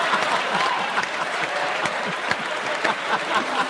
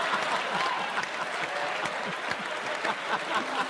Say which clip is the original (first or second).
second